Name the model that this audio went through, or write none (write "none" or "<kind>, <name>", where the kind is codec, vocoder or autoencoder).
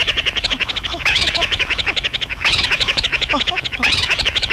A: autoencoder, DAC-VAE